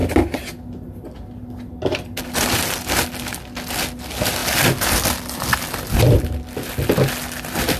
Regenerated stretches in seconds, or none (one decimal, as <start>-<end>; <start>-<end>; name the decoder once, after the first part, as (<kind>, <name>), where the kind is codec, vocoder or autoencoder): none